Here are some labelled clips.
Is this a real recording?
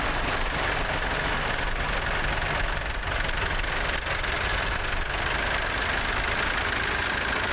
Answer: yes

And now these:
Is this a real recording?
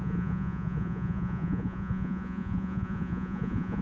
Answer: no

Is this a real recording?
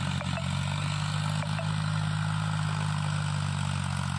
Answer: yes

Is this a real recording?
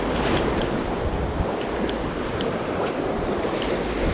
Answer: yes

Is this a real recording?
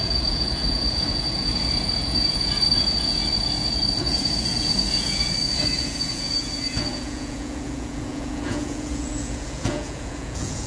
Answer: no